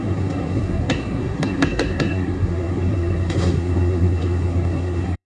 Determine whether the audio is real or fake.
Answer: fake